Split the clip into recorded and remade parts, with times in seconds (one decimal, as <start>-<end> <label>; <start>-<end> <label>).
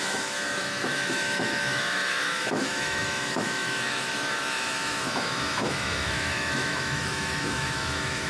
0.0-8.3 remade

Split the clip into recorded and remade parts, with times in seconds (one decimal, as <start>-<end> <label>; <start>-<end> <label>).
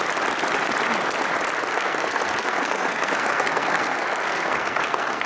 0.0-1.7 recorded; 1.7-5.3 remade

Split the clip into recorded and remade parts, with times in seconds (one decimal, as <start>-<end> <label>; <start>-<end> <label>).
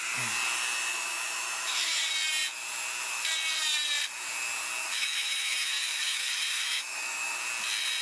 0.0-0.9 recorded; 0.9-2.0 remade; 2.0-4.8 recorded; 4.8-7.4 remade; 7.4-8.0 recorded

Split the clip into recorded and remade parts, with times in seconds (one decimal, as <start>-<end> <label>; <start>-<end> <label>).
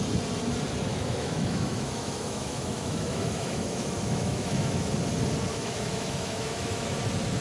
0.0-0.9 recorded; 0.9-4.9 remade; 4.9-5.5 recorded; 5.5-7.0 remade; 7.0-7.4 recorded